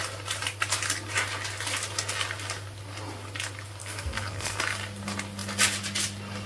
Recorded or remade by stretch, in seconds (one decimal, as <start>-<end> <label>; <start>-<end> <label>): 0.0-3.8 recorded; 3.8-4.6 remade; 4.6-6.5 recorded